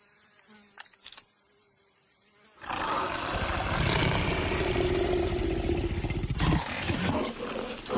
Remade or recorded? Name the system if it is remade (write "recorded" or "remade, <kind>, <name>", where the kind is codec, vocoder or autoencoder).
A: recorded